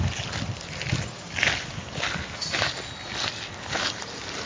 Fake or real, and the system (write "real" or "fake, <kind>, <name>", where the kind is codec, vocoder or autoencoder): real